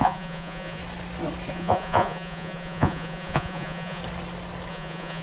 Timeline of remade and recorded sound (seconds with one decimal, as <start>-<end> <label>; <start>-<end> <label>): 0.0-0.8 remade; 0.8-1.5 recorded; 1.5-4.0 remade; 4.0-4.7 recorded; 4.7-5.2 remade